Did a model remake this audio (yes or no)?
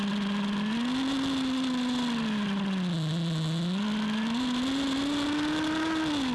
no